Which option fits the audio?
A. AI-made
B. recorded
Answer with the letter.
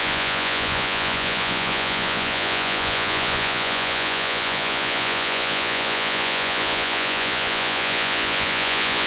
A